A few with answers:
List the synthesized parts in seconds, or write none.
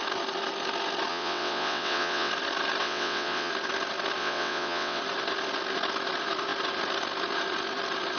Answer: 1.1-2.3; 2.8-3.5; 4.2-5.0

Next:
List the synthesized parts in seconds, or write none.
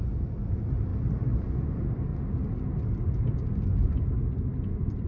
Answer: 0.0-0.9; 1.6-2.1; 4.6-5.1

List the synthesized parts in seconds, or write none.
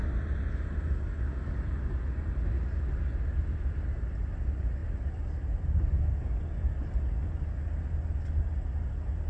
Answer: none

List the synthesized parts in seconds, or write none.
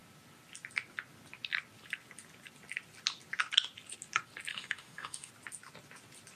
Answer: 4.5-5.3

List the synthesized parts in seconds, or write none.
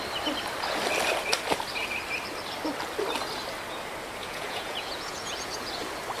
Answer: 4.2-5.7